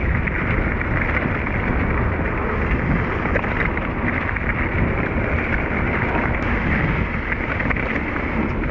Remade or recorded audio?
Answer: recorded